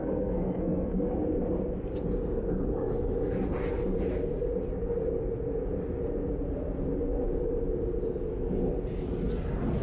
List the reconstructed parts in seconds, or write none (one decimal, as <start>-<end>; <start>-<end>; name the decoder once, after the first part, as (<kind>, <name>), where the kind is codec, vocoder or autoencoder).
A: 0.0-1.1 (codec, SNAC)